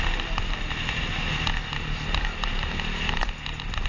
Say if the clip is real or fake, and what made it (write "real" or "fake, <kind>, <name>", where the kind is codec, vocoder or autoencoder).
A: real